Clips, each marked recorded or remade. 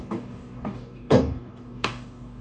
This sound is remade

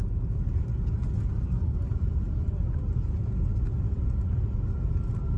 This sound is recorded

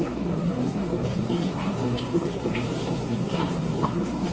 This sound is remade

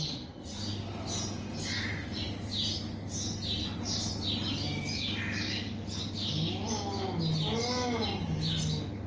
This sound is recorded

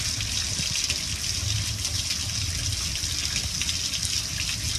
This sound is recorded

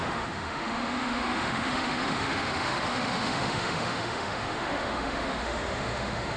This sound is remade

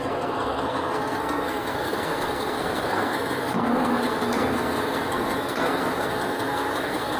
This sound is remade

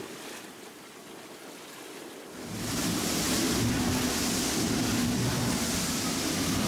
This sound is recorded